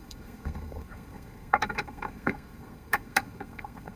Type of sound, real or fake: fake